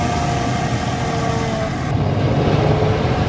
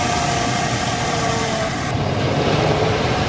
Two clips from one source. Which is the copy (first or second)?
second